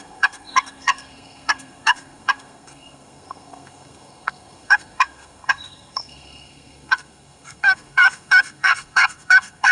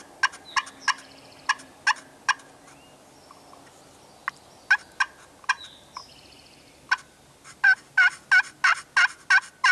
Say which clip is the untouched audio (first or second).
second